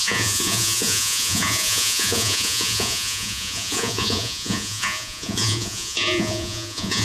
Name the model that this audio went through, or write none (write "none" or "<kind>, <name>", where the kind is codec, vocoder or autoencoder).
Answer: vocoder, Vocos